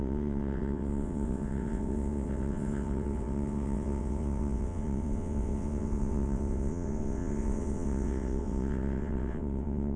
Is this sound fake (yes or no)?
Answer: yes